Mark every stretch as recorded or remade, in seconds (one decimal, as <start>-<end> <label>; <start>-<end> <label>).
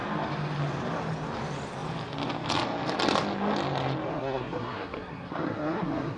0.0-4.1 recorded; 4.1-6.2 remade